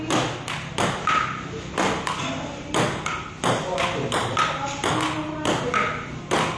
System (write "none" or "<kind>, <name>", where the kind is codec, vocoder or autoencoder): none